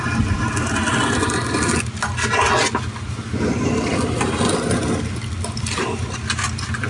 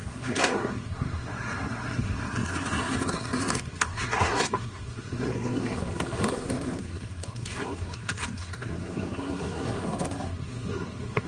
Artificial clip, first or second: second